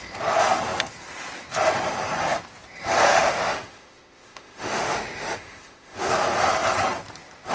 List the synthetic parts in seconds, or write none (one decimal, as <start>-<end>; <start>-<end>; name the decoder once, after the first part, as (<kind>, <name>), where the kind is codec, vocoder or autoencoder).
3.1-6.1 (autoencoder, DAC-VAE)